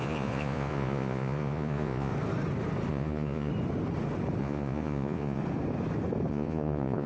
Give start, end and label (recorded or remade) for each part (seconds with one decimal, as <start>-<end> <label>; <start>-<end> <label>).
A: 0.0-2.1 remade; 2.1-2.9 recorded; 2.9-3.5 remade; 3.5-4.4 recorded; 4.4-5.4 remade; 5.4-6.3 recorded; 6.3-7.1 remade